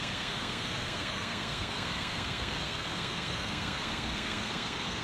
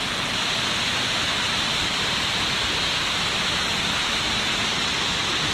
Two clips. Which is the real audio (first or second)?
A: second